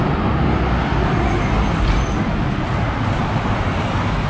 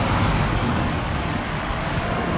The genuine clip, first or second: first